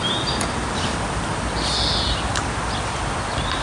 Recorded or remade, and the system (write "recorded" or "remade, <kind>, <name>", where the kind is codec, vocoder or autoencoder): recorded